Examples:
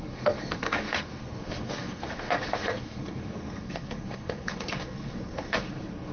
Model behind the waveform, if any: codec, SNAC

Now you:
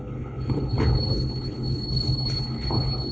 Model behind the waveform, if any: codec, HILCodec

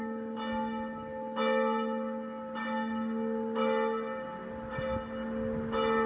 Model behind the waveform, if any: none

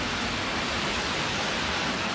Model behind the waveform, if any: none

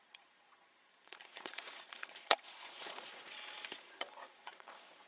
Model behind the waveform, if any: vocoder, Vocos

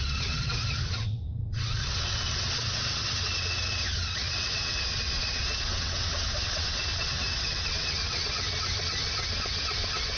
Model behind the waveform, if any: vocoder, WaveNeXt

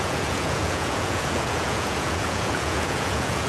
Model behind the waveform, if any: vocoder, Vocos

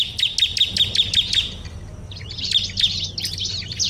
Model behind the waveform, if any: none